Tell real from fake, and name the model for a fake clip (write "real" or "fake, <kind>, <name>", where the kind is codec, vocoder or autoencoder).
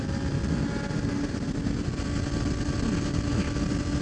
real